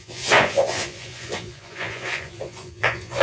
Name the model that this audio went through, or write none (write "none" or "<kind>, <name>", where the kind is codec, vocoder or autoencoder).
vocoder, Vocos